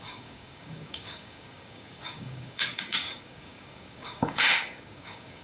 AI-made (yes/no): yes